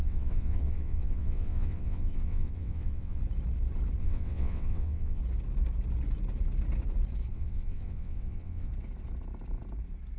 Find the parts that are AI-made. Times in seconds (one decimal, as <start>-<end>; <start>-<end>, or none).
0.0-3.2; 4.0-5.2; 7.3-8.7